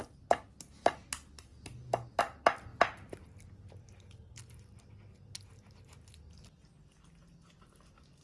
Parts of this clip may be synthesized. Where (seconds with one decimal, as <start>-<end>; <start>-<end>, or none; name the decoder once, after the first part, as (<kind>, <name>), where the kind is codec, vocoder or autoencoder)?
none